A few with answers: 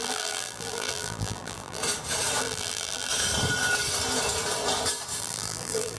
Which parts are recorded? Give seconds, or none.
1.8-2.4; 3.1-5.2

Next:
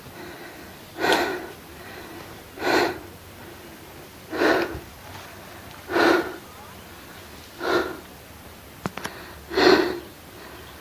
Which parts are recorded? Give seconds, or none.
0.0-1.3; 2.9-10.8

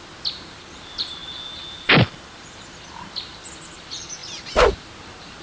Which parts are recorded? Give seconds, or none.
1.2-1.8; 4.2-4.7

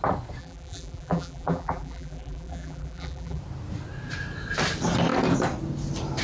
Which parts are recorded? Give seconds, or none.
0.0-0.4; 3.4-6.2

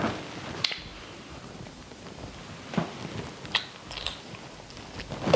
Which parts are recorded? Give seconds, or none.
0.0-0.9; 2.4-5.4